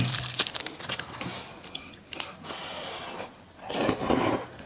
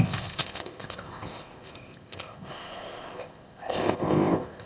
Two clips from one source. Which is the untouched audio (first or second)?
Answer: first